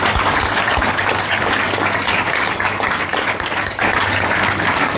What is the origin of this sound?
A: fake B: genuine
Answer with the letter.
A